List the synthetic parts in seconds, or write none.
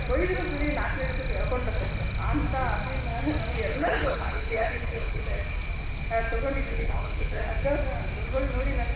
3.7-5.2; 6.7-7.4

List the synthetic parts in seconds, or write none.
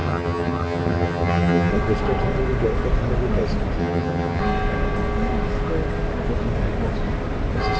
0.0-1.7; 3.8-4.4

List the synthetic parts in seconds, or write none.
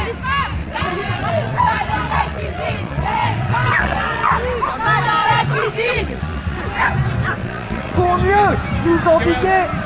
0.6-4.3; 5.2-6.6; 7.4-8.0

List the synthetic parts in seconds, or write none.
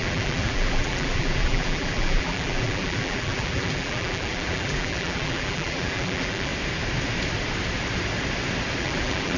0.0-6.5; 8.8-9.4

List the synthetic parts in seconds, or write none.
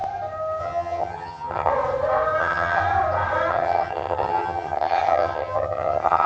0.6-1.7; 2.4-2.8; 3.5-6.3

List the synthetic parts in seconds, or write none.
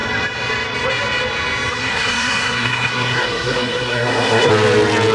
1.8-4.5